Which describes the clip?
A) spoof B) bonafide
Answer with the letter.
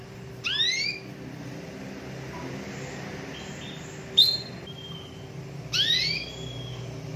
A